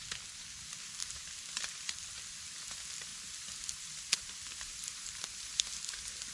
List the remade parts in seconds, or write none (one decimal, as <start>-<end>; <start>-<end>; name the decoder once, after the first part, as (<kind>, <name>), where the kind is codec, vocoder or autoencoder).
none